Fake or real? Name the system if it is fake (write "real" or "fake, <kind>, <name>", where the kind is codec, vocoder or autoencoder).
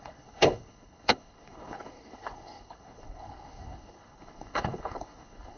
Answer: fake, codec, HILCodec